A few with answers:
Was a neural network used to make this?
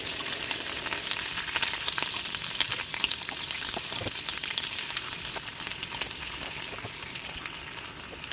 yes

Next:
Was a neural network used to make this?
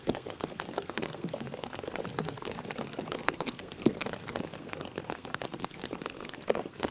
yes